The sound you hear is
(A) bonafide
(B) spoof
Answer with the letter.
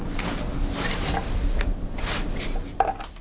A